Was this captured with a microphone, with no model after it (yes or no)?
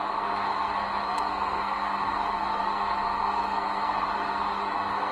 no